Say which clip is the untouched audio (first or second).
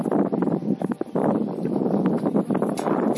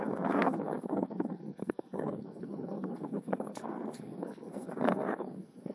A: first